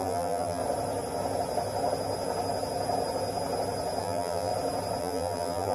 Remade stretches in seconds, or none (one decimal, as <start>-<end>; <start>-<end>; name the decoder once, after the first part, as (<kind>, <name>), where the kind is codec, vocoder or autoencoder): 0.0-0.6 (vocoder, BigVGAN v2); 4.0-4.5; 5.0-5.7